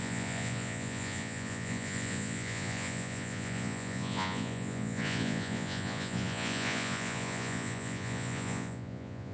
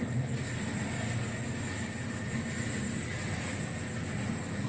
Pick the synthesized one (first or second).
first